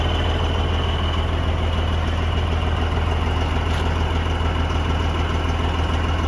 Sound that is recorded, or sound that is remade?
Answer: recorded